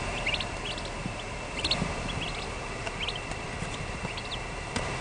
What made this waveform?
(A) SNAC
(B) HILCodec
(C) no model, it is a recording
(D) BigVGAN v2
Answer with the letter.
C